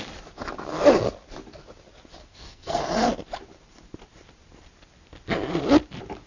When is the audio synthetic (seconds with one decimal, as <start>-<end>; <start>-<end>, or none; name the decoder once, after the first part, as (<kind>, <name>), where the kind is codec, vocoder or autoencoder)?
2.2-2.8 (codec, SNAC)